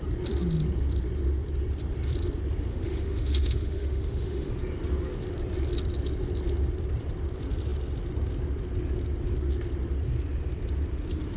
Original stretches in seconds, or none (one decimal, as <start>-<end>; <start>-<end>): 0.0-2.7; 4.5-11.4